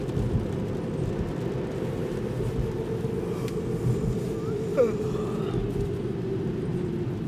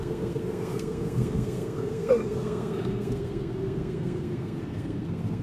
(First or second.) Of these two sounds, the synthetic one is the second